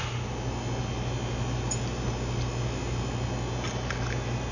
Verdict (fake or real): real